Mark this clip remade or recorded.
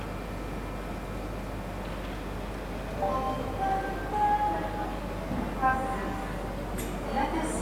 recorded